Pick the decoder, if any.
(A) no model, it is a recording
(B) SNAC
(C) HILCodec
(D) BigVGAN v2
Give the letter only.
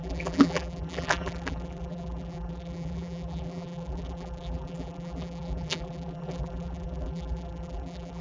D